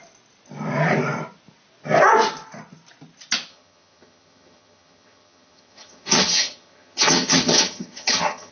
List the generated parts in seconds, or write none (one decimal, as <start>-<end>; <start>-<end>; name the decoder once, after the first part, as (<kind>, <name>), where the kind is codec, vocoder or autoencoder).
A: 3.5-8.5 (vocoder, HiFi-GAN)